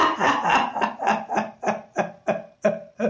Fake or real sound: real